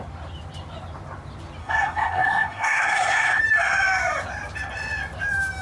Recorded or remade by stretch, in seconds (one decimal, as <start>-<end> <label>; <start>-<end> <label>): 0.0-1.6 recorded; 1.6-3.4 remade; 3.4-5.6 recorded